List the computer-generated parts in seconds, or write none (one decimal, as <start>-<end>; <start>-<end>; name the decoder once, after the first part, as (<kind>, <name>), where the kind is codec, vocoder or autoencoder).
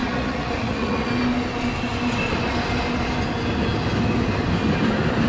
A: 0.0-1.1 (vocoder, Vocos)